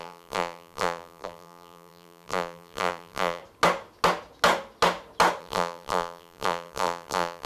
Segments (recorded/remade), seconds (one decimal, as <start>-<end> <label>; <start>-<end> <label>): 0.0-3.4 remade; 3.4-5.4 recorded; 5.4-7.5 remade